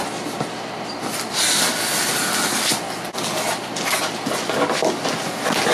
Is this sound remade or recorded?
recorded